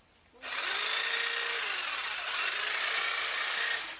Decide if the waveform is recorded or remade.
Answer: recorded